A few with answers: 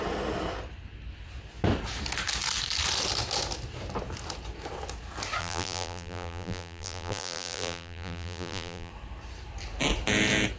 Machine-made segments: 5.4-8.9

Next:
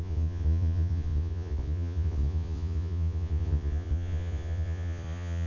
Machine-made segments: 0.0-5.5

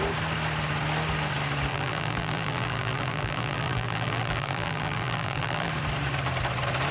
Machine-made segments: 1.7-5.7

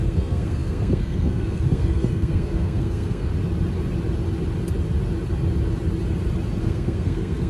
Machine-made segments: 0.0-3.3; 6.6-7.5